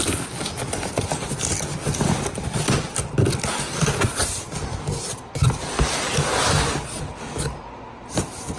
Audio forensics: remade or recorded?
recorded